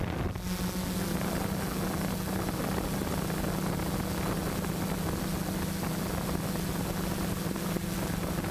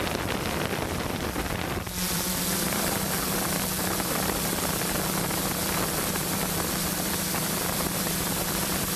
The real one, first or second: first